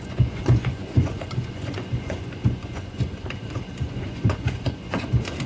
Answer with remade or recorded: remade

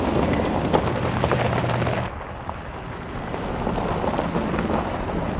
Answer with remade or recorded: recorded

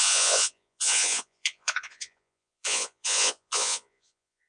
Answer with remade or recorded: remade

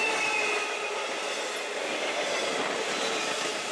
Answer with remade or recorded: recorded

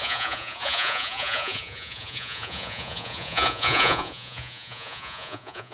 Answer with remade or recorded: remade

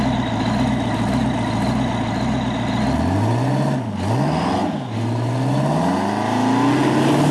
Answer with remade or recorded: recorded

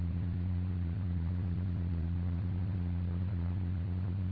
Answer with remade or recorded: remade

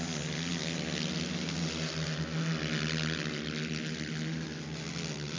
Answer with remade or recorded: recorded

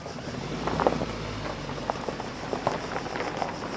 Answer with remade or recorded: recorded